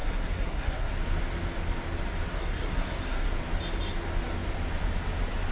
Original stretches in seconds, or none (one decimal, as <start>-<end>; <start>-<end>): 0.9-2.4; 3.3-5.5